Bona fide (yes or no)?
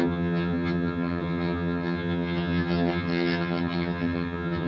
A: no